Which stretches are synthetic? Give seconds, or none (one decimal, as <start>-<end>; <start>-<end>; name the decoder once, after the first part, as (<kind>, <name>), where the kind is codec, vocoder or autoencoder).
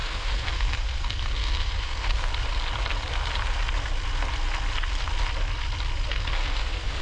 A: 0.0-2.3 (codec, SNAC); 6.1-7.0